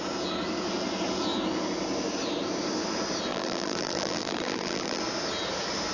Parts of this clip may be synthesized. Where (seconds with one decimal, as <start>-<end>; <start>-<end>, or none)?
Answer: 3.3-5.0